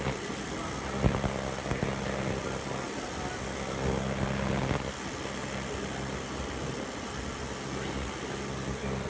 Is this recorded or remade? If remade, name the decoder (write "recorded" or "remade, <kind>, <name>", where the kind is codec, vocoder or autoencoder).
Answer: recorded